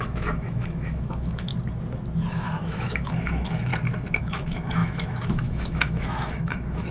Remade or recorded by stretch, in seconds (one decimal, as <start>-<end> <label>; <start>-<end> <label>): 0.0-1.5 remade; 1.5-2.3 recorded; 2.3-3.7 remade; 3.7-4.2 recorded; 4.2-6.9 remade